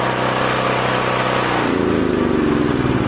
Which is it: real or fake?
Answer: real